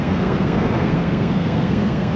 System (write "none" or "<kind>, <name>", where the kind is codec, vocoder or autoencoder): codec, SNAC